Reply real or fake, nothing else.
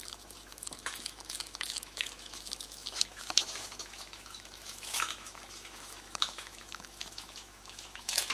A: fake